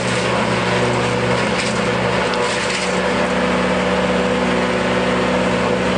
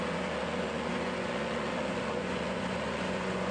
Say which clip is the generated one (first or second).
second